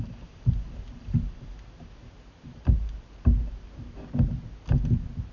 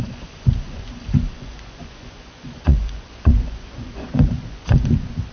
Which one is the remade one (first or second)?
second